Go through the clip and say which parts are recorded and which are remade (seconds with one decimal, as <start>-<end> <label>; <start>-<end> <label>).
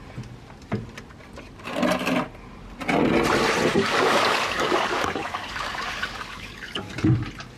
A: 0.0-3.7 recorded; 3.7-6.9 remade; 6.9-7.6 recorded